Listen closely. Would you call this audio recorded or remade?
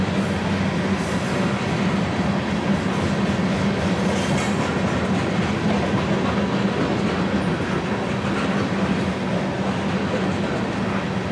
recorded